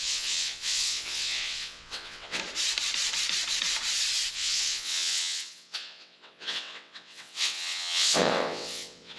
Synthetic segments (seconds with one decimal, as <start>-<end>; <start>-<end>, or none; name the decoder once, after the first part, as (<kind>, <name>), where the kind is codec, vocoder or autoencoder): 0.0-2.4 (vocoder, WaveNeXt); 4.3-9.2